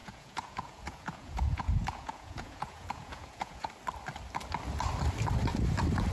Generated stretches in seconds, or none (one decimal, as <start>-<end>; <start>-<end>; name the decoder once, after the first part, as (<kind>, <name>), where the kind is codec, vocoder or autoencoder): 0.0-3.7 (vocoder, Vocos)

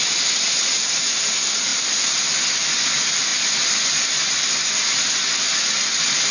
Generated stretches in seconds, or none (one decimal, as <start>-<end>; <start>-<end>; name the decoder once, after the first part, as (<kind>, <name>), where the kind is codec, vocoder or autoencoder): none

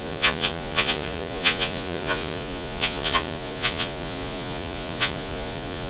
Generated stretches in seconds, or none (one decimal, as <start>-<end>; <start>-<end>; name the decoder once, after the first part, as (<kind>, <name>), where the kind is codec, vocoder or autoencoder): 0.0-5.9 (vocoder, Vocos)

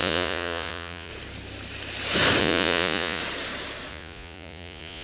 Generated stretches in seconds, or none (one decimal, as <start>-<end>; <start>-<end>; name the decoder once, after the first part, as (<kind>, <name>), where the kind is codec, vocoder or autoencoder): 0.0-1.1 (vocoder, Vocos); 2.4-3.2; 3.9-5.0

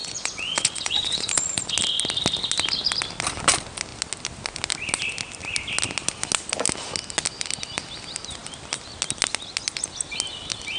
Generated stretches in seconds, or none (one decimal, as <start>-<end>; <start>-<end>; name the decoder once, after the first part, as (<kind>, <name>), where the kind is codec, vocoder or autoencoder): 0.0-1.7 (vocoder, Vocos)

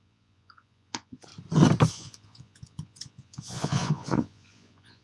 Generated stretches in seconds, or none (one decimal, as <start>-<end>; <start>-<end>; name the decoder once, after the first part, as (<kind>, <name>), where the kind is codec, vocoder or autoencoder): 0.0-1.3 (vocoder, Vocos); 1.9-5.0